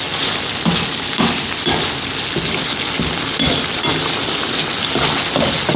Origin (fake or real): real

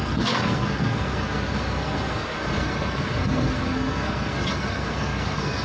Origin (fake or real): fake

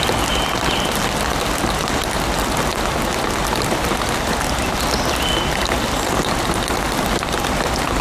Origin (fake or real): real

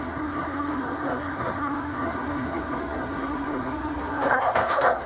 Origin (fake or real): fake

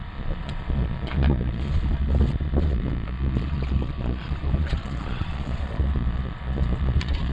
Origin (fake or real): fake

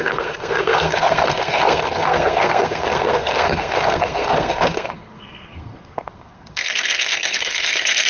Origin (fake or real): fake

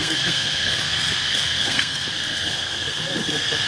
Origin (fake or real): fake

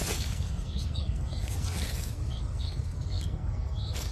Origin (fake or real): fake